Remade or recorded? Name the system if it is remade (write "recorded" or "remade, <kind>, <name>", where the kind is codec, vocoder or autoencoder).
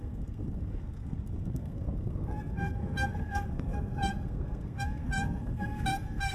remade, codec, SNAC